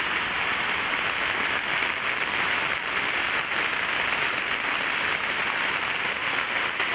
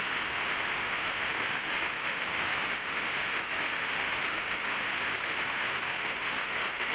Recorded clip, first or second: first